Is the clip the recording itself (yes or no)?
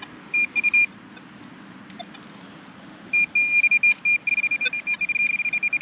yes